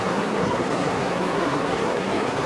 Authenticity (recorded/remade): remade